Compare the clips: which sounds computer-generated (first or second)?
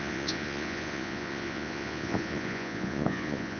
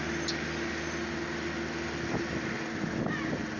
first